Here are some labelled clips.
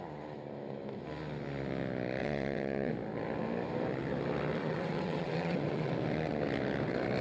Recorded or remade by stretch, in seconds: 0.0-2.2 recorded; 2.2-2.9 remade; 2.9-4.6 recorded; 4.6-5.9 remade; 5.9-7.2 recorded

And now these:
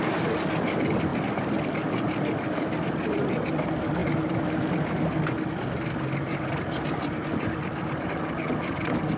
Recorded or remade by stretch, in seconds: 0.0-9.2 recorded

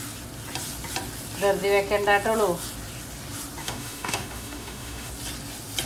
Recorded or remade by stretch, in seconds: 0.0-3.6 recorded; 3.6-5.1 remade; 5.1-5.9 recorded

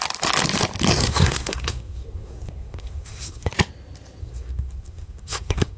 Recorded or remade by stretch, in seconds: 0.0-1.0 recorded; 1.0-3.5 remade; 3.5-4.2 recorded; 4.2-5.8 remade

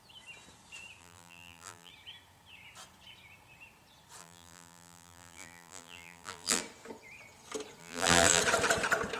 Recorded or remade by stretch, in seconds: 0.0-1.0 recorded; 1.0-1.9 remade; 1.9-4.2 recorded; 4.2-6.6 remade; 6.6-7.8 recorded; 7.8-8.4 remade; 8.4-9.2 recorded

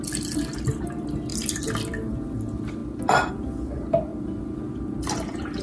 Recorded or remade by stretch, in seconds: 0.0-1.3 recorded; 1.3-2.1 remade; 2.1-4.1 recorded; 4.1-5.6 remade

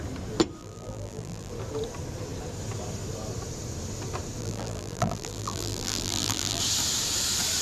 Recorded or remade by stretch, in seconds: 0.0-0.6 recorded; 0.6-1.5 remade; 1.5-4.4 recorded; 4.4-6.6 remade; 6.6-7.6 recorded